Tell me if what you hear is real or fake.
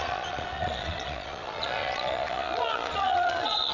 fake